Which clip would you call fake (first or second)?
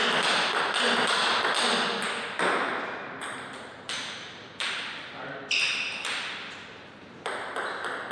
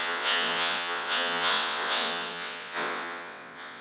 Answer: second